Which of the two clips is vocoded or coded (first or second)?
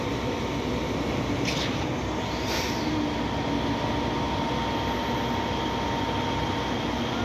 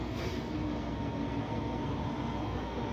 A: second